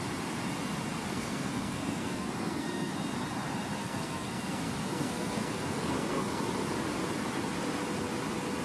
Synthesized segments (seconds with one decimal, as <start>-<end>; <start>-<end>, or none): 1.1-2.9; 3.8-6.4

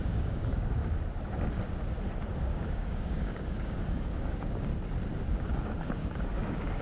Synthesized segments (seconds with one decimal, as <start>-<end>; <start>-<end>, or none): 0.0-0.8; 2.4-4.7; 5.3-6.8